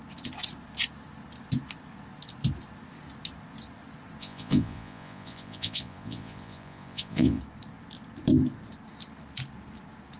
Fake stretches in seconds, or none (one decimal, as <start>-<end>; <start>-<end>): 4.2-7.4